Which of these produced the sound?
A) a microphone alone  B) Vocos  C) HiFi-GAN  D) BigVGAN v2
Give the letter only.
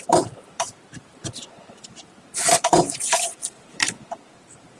D